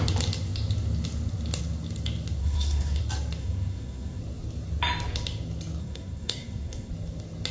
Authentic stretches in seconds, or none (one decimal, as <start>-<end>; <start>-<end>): 0.0-2.4; 3.0-3.4; 4.2-5.8; 6.9-7.5